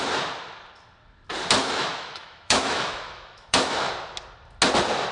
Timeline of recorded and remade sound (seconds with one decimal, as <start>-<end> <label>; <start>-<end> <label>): 0.0-1.6 recorded; 1.6-3.9 remade; 3.9-5.1 recorded